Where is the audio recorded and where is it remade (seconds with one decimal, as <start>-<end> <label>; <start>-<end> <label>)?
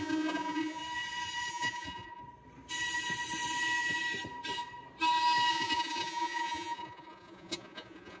0.0-0.8 remade; 0.8-1.5 recorded; 1.5-2.2 remade; 2.2-5.5 recorded; 5.5-8.2 remade